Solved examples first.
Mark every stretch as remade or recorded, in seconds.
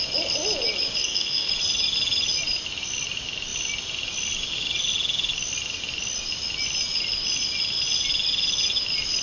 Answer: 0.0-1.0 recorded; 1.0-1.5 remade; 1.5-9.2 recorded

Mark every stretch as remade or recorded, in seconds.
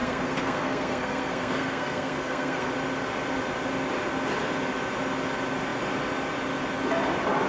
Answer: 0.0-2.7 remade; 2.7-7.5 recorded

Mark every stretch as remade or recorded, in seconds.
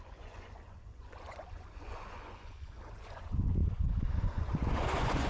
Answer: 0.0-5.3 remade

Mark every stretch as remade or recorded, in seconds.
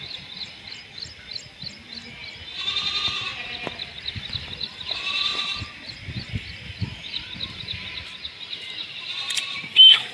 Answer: 0.0-5.3 recorded; 5.3-6.3 remade; 6.3-10.1 recorded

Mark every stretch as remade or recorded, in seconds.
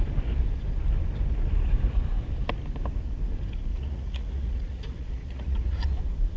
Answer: 0.0-3.7 recorded; 3.7-6.0 remade; 6.0-6.4 recorded